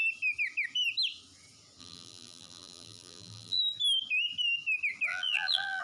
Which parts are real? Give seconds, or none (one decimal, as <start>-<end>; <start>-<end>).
0.0-1.8; 3.6-5.1